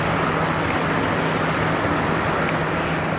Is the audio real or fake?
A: real